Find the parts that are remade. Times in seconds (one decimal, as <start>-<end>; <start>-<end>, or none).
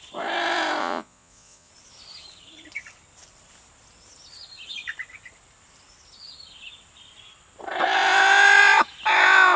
0.8-1.7